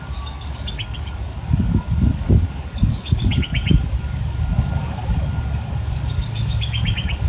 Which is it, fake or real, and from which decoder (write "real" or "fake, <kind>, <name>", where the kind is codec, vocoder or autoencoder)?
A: fake, codec, DAC